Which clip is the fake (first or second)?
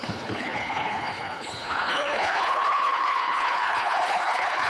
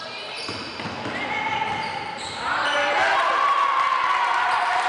first